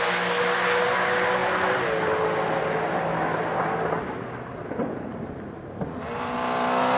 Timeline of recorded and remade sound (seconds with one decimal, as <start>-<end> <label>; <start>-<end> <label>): 0.0-7.0 recorded